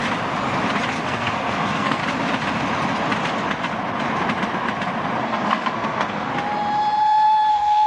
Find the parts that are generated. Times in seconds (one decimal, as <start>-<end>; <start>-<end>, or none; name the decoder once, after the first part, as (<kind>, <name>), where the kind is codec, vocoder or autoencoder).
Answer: 0.9-2.0 (codec, SNAC); 5.2-6.3; 7.5-7.9